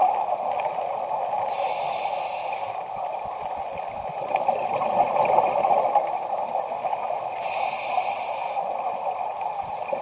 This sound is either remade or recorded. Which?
recorded